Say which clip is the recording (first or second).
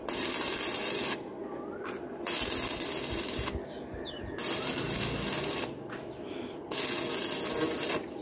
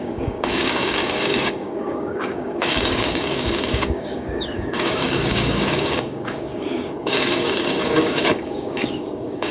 first